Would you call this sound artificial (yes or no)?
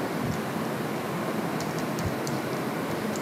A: no